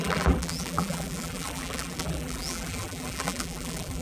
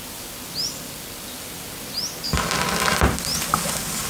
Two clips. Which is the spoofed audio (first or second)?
first